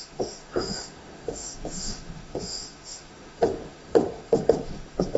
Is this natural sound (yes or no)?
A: no